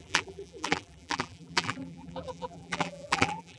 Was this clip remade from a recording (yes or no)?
yes